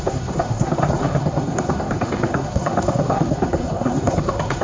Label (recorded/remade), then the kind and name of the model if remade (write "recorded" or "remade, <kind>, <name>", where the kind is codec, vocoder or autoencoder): remade, codec, SNAC